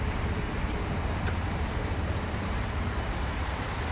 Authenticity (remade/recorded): remade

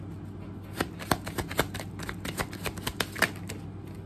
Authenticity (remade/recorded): recorded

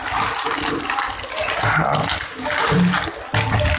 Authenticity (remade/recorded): recorded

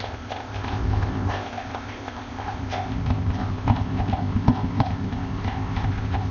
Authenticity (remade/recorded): remade